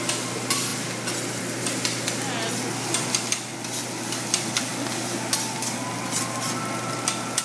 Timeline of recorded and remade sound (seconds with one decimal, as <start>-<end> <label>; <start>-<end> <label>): 0.0-7.4 recorded

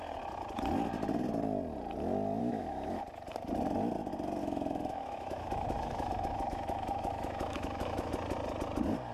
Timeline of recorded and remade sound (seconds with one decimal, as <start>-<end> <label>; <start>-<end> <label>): 0.0-2.4 recorded; 2.4-3.0 remade; 3.0-4.4 recorded; 4.4-8.1 remade; 8.1-9.1 recorded

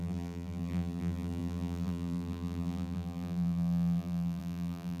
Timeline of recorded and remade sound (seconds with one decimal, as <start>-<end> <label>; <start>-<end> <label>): 0.0-5.0 remade

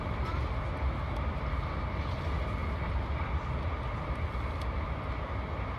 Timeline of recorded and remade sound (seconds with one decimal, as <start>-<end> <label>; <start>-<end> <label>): 0.0-5.8 recorded